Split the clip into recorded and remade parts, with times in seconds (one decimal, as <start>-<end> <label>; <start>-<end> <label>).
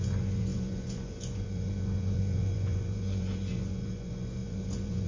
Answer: 0.0-5.1 remade